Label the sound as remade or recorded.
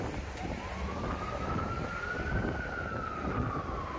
recorded